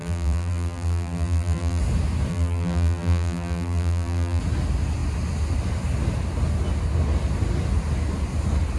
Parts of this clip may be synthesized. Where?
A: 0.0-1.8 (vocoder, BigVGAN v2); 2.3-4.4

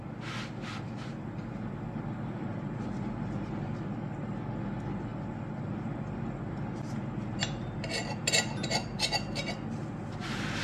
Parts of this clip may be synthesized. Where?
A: none

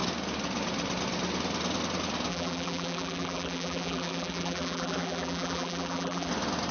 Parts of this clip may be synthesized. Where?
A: 2.3-6.3 (vocoder, BigVGAN v2)

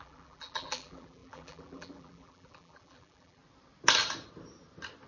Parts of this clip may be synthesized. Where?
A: 0.0-3.4 (vocoder, BigVGAN v2)

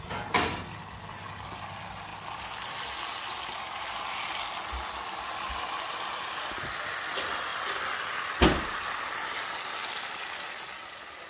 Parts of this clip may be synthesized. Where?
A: none

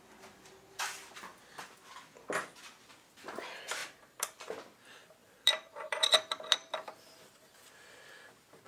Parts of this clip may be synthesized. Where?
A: 3.8-4.5 (vocoder, BigVGAN v2); 5.2-7.5

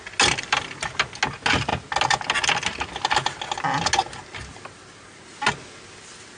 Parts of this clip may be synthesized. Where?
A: none

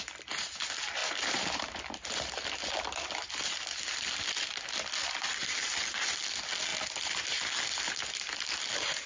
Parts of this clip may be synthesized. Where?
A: 1.0-1.8 (vocoder, BigVGAN v2)